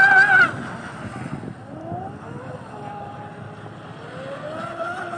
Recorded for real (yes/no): yes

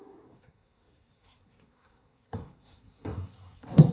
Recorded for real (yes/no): no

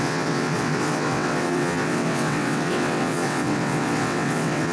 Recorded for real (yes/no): no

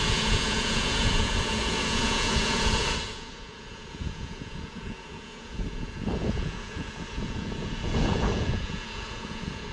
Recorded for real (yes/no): no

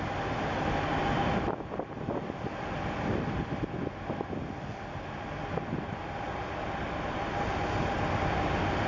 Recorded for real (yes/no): yes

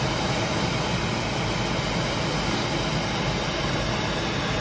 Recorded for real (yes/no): yes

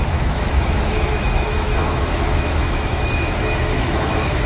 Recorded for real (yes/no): no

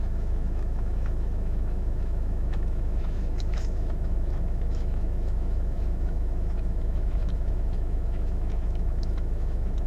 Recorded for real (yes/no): no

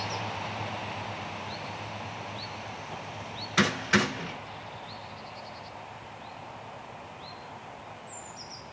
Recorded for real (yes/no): yes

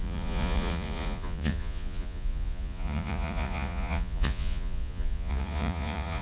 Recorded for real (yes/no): no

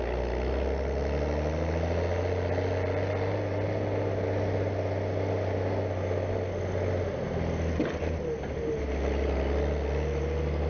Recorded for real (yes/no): yes